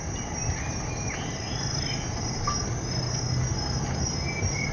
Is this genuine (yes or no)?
yes